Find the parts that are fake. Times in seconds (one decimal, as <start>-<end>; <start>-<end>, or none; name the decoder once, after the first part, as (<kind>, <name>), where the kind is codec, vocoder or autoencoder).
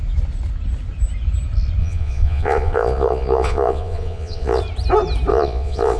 1.8-4.6 (vocoder, Vocos); 5.3-6.0